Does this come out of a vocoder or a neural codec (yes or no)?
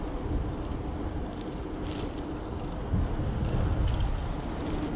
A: no